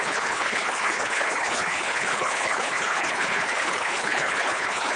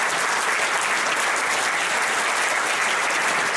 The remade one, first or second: first